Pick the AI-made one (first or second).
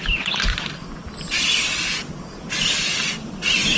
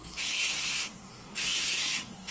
second